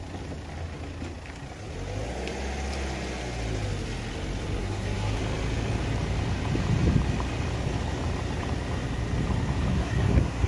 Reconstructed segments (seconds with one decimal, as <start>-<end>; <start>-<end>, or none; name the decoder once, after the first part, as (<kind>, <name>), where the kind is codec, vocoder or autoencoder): 4.6-5.2 (codec, SNAC); 9.7-10.5